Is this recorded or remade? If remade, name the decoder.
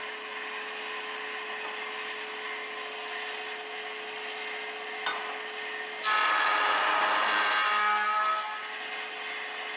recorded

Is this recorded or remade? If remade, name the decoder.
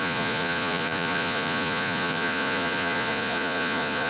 remade, vocoder, Vocos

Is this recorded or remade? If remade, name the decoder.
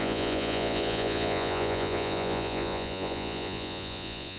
remade, vocoder, Vocos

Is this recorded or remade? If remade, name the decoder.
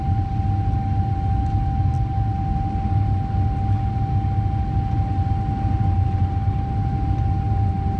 recorded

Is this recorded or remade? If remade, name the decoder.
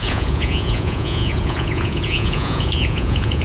remade, vocoder, Vocos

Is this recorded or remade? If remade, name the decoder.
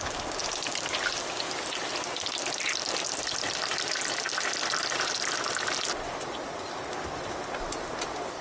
recorded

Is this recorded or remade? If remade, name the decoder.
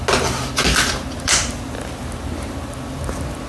recorded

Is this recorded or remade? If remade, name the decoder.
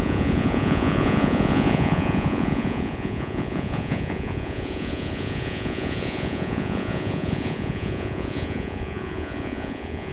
remade, vocoder, Vocos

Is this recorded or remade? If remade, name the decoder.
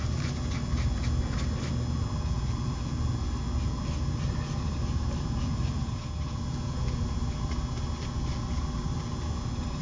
recorded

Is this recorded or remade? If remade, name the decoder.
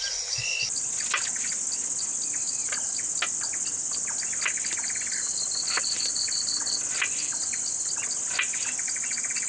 recorded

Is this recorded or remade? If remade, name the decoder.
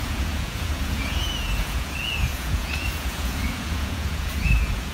remade, vocoder, Vocos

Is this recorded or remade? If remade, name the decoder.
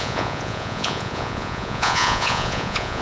remade, vocoder, Vocos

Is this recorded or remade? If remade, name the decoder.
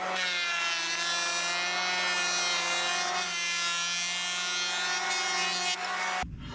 recorded